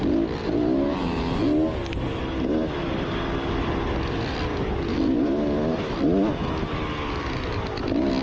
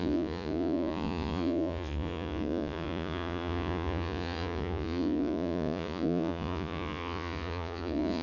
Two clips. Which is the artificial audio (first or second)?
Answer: second